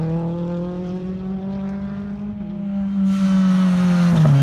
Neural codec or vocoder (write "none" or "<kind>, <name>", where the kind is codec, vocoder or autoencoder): none